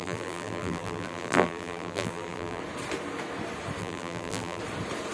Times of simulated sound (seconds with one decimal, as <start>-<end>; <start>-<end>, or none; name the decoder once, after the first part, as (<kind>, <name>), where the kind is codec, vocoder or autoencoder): 0.0-2.6 (vocoder, BigVGAN v2); 3.8-4.6